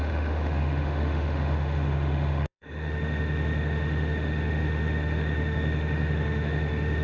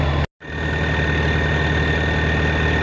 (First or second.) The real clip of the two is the second